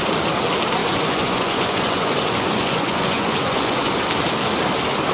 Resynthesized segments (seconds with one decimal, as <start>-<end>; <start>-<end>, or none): 0.8-3.9